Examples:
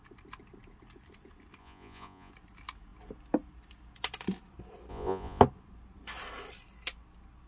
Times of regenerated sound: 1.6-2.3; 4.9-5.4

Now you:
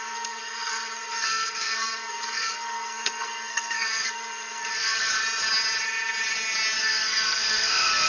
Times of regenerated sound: 0.0-5.1; 6.8-8.1

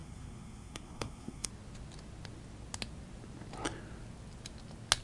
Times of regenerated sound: 0.0-1.5